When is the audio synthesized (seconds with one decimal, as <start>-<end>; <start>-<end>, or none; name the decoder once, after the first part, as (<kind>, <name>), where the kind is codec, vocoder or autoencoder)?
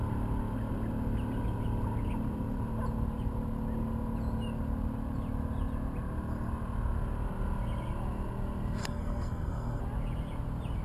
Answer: 8.8-9.8 (codec, SNAC)